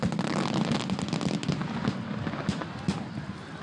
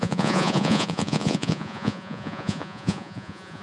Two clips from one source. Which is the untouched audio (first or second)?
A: first